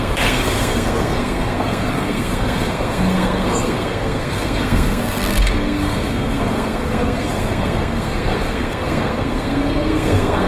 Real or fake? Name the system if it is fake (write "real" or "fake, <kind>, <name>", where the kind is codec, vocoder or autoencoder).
fake, codec, SNAC